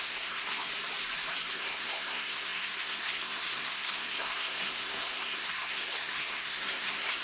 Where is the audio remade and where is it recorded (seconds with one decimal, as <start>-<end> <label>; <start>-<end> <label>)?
0.0-0.7 remade; 0.7-1.5 recorded; 1.5-7.2 remade